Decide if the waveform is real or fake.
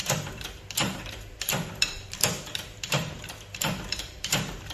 fake